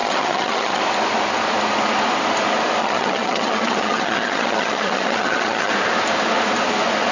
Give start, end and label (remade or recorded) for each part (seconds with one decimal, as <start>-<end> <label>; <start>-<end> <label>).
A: 0.0-0.8 remade; 0.8-2.8 recorded; 2.8-5.7 remade; 5.7-7.1 recorded